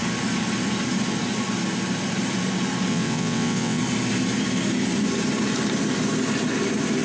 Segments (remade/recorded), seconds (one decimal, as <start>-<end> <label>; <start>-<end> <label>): 0.0-2.9 recorded; 2.9-3.8 remade; 3.8-7.0 recorded